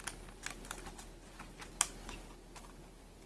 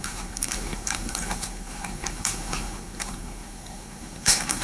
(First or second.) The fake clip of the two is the second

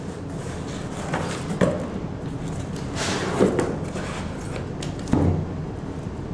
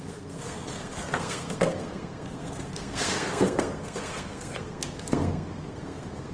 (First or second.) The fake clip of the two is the second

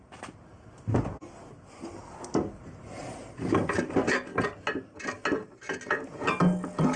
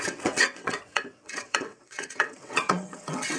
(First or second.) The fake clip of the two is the second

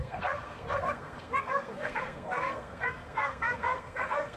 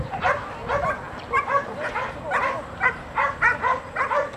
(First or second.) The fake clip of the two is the first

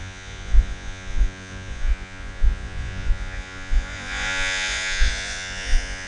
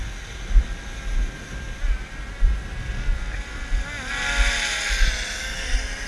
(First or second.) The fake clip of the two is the first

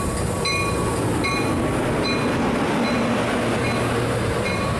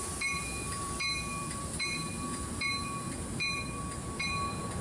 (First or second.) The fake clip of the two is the second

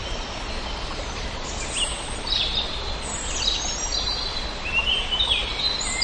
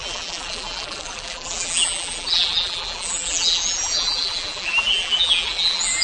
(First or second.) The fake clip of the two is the second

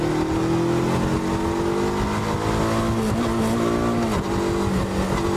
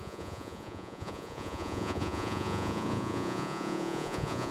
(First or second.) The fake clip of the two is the second